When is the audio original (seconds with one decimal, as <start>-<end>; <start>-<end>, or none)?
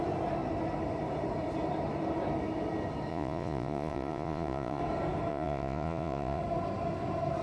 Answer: 0.0-3.1; 4.8-5.3; 6.4-7.4